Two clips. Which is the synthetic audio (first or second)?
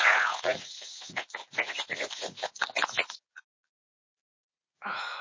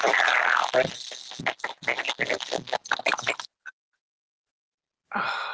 first